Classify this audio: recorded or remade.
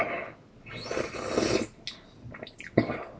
recorded